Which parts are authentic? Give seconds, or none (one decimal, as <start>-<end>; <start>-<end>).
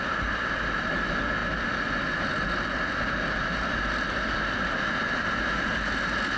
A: 0.0-6.4